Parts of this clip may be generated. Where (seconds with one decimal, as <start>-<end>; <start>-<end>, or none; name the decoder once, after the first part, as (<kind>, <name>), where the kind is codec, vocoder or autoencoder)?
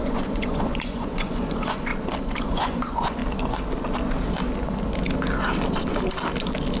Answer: 0.0-1.9 (vocoder, Vocos); 2.4-3.2